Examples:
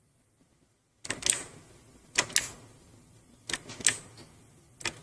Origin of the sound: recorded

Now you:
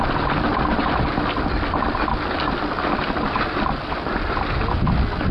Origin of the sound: recorded